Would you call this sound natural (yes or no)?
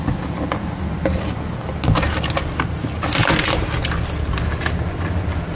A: yes